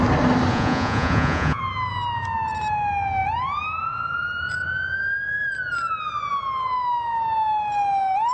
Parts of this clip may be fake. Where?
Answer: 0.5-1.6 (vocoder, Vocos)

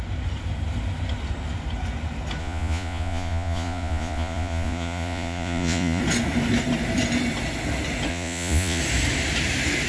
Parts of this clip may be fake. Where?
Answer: 2.4-6.0 (vocoder, Vocos); 8.1-8.8